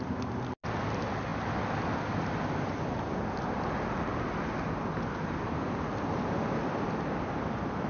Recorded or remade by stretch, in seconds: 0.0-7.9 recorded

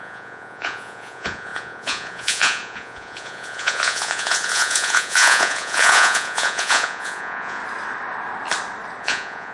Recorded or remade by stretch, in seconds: 0.0-7.6 remade; 7.6-9.0 recorded; 9.0-9.5 remade

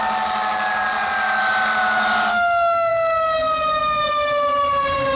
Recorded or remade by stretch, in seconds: 0.0-5.2 recorded

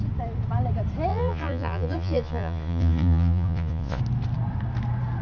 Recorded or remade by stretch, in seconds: 0.0-1.1 recorded; 1.1-4.0 remade; 4.0-5.2 recorded

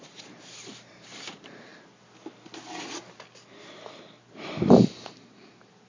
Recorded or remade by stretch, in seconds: 0.0-1.7 remade; 1.7-4.2 recorded; 4.2-5.9 remade